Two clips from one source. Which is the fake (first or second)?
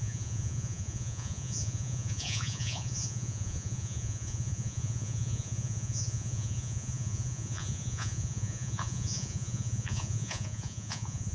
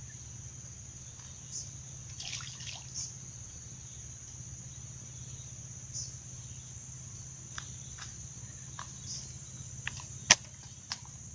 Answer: first